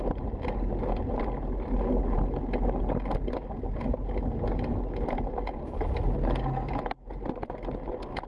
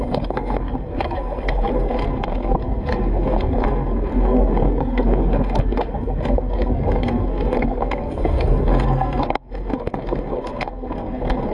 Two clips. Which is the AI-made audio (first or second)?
second